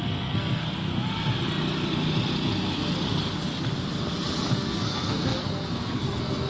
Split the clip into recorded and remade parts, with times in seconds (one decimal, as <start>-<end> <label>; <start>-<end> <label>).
0.0-0.6 remade; 0.6-4.5 recorded; 4.5-6.5 remade